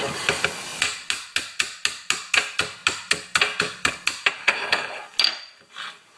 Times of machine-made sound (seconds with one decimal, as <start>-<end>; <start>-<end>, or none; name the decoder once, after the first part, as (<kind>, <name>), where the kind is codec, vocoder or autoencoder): 4.4-5.0 (codec, HILCodec)